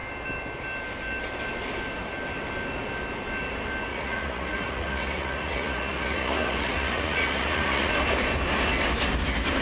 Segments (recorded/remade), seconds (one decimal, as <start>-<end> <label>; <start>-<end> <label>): 0.0-3.9 recorded; 3.9-7.9 remade; 7.9-9.6 recorded